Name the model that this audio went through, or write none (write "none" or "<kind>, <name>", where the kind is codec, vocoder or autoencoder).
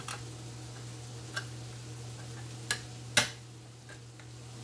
none